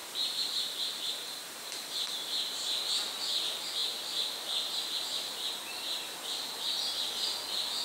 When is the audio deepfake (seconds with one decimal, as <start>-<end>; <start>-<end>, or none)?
0.0-3.2; 3.8-5.3